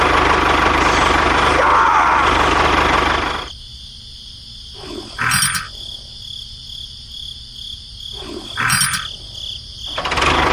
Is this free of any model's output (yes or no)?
yes